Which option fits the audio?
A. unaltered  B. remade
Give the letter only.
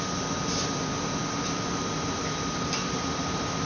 A